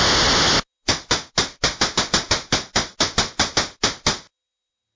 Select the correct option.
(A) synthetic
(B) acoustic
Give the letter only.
B